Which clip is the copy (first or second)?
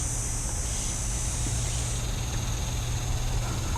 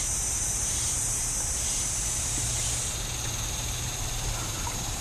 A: second